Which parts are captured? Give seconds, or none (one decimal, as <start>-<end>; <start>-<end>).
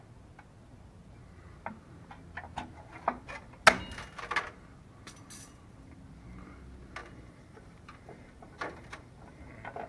0.0-7.0; 9.5-9.9